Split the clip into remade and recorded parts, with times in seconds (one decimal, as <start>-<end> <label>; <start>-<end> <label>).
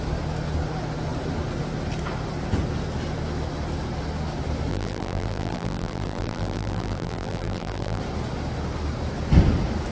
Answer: 0.0-4.7 recorded; 4.7-8.0 remade; 8.0-9.9 recorded